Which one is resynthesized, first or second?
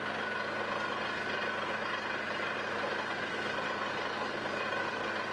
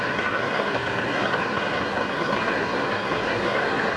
second